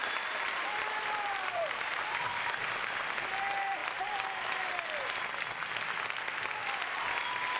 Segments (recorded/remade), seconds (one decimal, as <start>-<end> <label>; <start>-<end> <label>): 0.0-2.0 remade; 2.0-3.8 recorded; 3.8-4.6 remade; 4.6-7.6 recorded